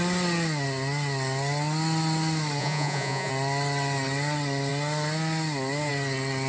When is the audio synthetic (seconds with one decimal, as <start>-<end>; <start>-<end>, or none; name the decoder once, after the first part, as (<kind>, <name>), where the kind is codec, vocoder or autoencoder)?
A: 2.6-3.3 (vocoder, Vocos)